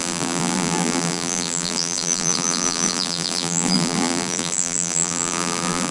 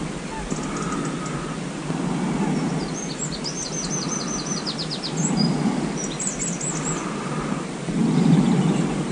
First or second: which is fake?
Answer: first